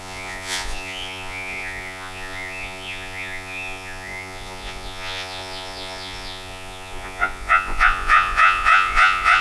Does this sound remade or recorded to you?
remade